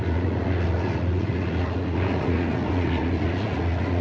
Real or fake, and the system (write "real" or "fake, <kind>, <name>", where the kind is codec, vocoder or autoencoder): fake, vocoder, Vocos